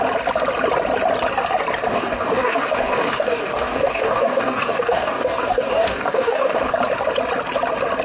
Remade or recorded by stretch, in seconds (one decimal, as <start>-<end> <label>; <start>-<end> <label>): 0.0-1.9 recorded; 1.9-6.7 remade; 6.7-8.0 recorded